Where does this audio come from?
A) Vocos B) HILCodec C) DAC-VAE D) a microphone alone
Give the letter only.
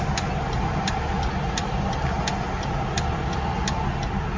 D